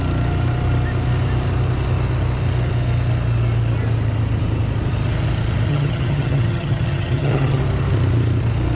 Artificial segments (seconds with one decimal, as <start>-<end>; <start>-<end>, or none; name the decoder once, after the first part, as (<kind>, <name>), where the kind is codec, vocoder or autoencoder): 5.7-7.6 (vocoder, HiFi-GAN)